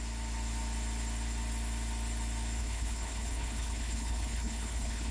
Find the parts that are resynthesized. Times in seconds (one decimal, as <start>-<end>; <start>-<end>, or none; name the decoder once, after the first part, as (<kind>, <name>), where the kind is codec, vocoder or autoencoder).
2.6-5.1 (codec, HILCodec)